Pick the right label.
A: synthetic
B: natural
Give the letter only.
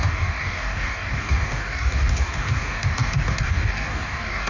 A